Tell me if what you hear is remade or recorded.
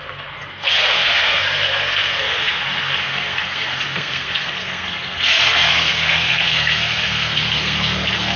remade